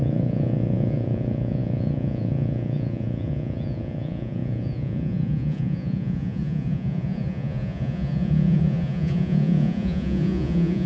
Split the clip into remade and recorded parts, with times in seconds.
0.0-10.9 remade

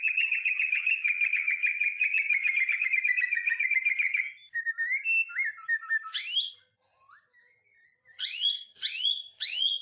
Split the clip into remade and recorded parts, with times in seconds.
0.0-3.8 remade; 3.8-8.0 recorded; 8.0-9.8 remade